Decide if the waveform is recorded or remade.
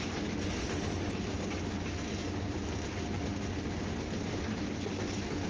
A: recorded